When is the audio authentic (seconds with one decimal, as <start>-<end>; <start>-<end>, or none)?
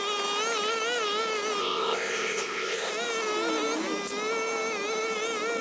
0.0-1.6; 2.9-5.6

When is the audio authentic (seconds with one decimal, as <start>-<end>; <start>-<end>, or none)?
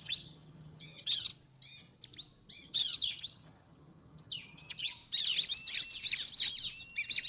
1.3-2.6; 5.0-7.3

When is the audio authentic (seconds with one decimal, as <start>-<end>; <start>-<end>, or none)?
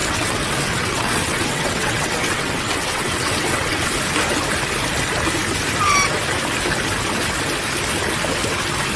3.9-9.0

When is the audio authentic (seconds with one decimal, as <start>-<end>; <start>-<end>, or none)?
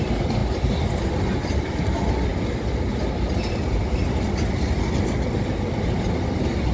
0.0-6.7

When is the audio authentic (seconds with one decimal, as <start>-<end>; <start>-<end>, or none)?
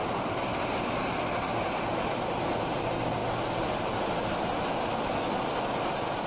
0.0-6.3